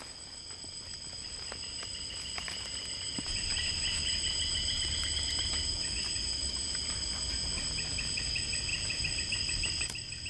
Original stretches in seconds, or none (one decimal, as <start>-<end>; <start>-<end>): 0.0-1.8; 3.1-8.7